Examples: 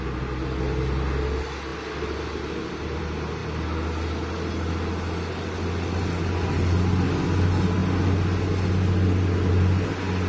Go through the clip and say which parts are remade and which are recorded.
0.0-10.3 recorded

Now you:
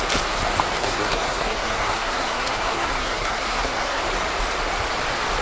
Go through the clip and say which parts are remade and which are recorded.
0.0-0.8 recorded; 0.8-4.0 remade; 4.0-5.4 recorded

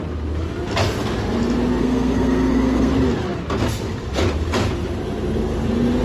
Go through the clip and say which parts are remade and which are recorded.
0.0-1.8 recorded; 1.8-2.9 remade; 2.9-6.0 recorded

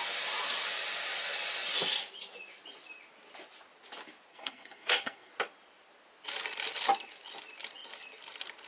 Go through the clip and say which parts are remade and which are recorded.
0.0-4.3 recorded; 4.3-5.3 remade; 5.3-8.7 recorded